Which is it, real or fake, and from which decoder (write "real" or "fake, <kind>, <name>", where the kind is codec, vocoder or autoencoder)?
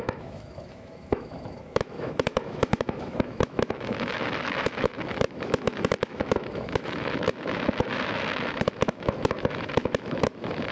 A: fake, autoencoder, DAC-VAE